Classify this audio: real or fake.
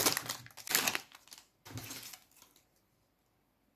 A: real